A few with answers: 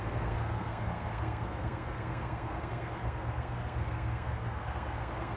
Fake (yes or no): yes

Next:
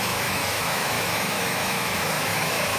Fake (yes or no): yes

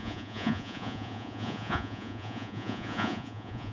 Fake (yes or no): yes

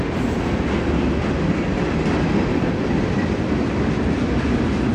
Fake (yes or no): no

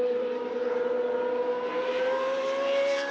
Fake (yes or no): yes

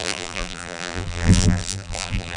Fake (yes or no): yes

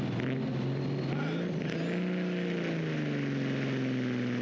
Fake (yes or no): no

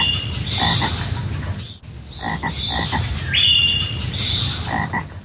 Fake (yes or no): no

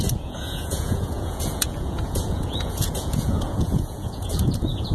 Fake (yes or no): yes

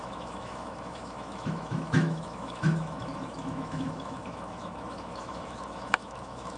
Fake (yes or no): yes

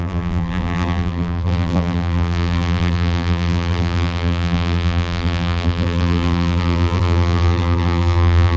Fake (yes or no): yes